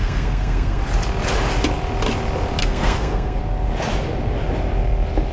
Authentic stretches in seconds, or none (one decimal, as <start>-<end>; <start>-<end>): 0.8-2.6; 3.4-5.3